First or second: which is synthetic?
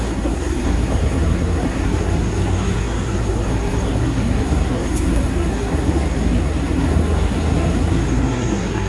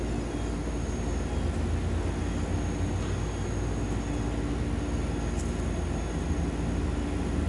first